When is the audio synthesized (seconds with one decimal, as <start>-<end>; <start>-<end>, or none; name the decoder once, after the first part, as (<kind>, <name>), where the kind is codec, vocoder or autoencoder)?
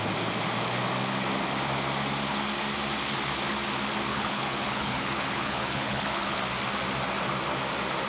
4.1-6.4 (codec, HILCodec)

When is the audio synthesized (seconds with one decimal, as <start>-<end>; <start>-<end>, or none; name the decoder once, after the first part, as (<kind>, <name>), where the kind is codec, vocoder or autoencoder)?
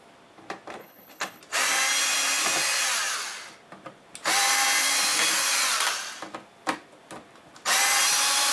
0.8-1.4 (codec, HILCodec)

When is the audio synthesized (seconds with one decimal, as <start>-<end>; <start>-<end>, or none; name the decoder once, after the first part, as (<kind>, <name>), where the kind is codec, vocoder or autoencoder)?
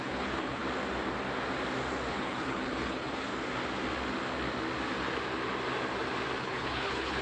0.0-0.6 (codec, HILCodec); 2.1-3.3; 6.4-7.2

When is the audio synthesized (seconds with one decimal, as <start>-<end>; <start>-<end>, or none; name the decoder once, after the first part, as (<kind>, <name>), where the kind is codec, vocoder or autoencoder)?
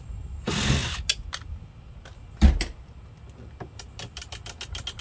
none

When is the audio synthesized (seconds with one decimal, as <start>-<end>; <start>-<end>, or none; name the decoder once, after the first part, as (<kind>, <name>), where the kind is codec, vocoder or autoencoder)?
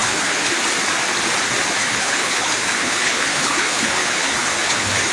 0.0-0.5 (codec, HILCodec); 1.8-5.1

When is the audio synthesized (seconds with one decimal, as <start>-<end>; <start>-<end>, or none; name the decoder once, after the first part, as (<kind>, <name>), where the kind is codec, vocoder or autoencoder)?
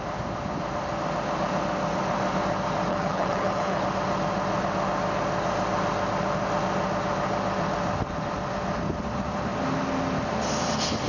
2.9-3.8 (codec, HILCodec)